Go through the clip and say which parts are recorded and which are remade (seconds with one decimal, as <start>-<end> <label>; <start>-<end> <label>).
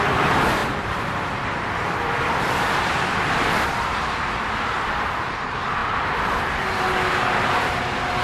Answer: 0.0-0.6 recorded; 0.6-5.1 remade; 5.1-5.8 recorded; 5.8-6.8 remade; 6.8-8.2 recorded